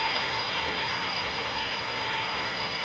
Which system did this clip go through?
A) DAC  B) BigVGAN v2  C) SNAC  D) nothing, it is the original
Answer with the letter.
C